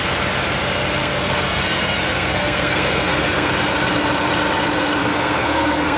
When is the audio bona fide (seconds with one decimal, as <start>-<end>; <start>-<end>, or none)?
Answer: 0.0-1.0; 3.5-5.0